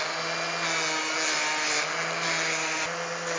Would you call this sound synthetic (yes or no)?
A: no